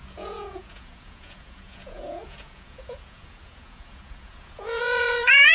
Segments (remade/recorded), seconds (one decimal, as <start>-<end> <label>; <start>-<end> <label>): 0.0-5.5 remade